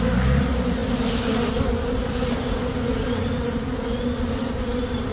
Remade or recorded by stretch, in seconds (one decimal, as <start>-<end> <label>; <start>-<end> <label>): 0.0-5.1 recorded